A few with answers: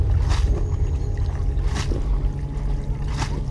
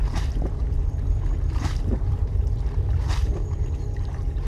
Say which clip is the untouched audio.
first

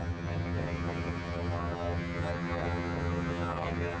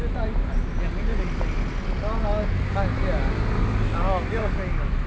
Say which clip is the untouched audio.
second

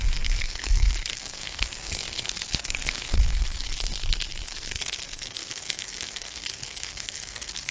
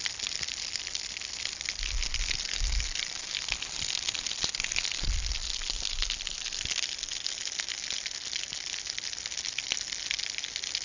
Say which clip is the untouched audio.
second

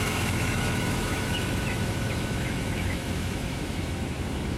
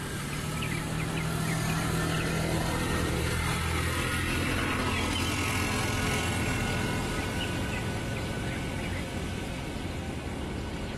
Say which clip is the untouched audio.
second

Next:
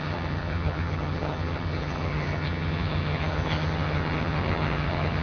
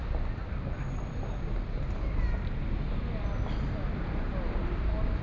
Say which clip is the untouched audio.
second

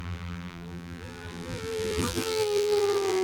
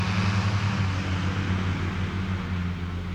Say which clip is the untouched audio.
second